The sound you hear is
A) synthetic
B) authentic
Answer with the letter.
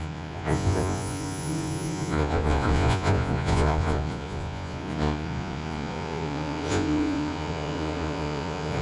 A